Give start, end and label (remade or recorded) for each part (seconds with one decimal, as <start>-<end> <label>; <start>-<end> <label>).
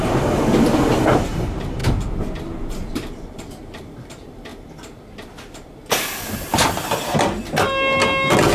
0.0-1.8 remade; 1.8-2.9 recorded; 2.9-4.5 remade; 4.5-8.5 recorded